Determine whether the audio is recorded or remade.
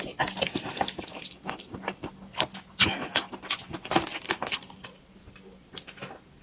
recorded